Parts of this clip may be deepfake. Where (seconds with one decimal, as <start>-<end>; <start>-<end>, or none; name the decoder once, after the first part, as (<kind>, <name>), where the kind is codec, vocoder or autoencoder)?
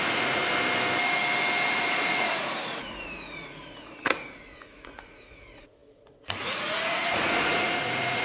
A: 0.0-0.4 (vocoder, Vocos); 1.7-8.2